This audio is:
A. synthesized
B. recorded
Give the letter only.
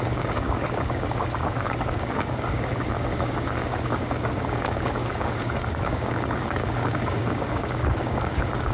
A